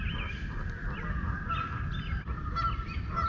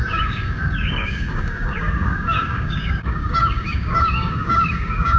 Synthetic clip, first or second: second